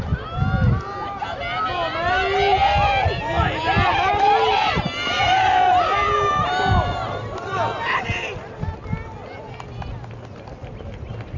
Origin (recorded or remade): recorded